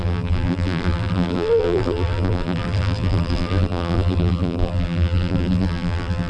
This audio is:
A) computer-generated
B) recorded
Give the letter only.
A